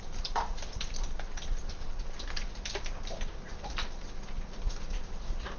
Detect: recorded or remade remade